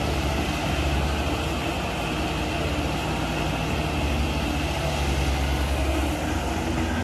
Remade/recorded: recorded